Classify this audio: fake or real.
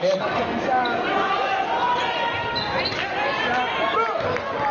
real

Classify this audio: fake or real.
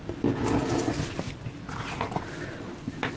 real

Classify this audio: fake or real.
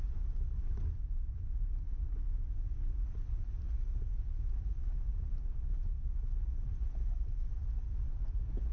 real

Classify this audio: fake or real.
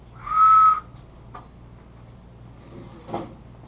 real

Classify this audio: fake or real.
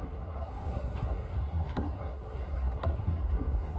fake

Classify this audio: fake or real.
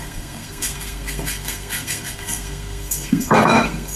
fake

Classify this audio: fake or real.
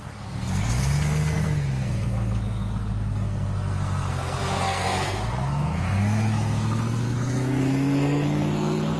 fake